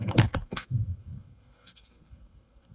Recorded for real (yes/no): no